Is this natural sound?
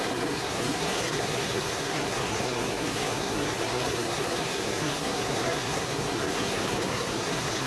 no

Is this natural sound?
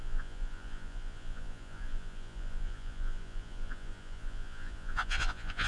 no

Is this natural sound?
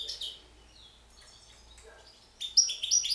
yes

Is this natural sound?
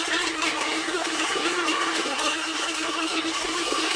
no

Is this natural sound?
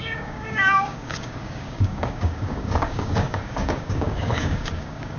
no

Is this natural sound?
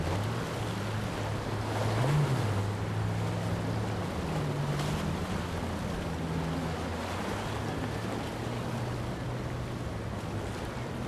yes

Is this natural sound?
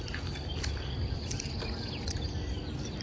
yes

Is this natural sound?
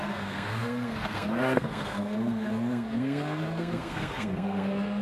no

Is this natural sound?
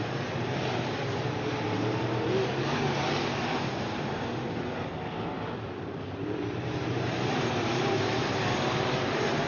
no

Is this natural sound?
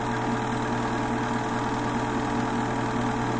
yes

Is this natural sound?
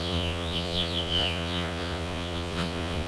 no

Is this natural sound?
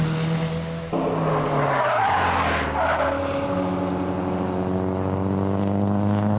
yes